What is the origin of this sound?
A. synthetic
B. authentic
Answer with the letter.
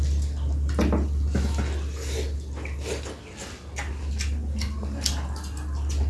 B